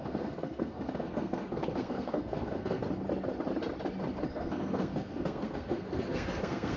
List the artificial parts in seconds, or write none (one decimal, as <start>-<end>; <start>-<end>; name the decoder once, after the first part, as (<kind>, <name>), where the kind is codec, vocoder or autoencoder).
0.0-2.8 (codec, SNAC); 4.3-6.8